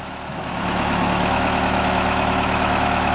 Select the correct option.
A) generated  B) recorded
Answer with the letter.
A